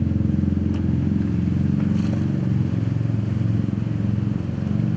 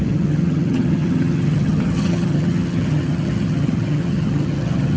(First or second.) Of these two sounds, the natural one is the first